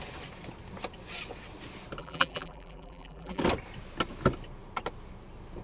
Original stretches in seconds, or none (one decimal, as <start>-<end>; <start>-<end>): 0.0-2.0; 3.4-5.6